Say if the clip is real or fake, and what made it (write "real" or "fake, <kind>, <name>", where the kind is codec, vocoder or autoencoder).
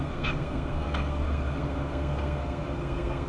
fake, codec, SNAC